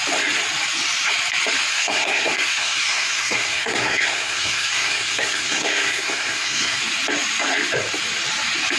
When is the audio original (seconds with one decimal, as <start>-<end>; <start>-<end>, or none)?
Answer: 0.0-1.7; 6.8-8.8